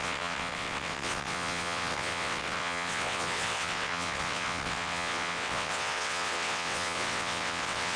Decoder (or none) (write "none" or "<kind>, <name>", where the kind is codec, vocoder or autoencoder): vocoder, WaveNeXt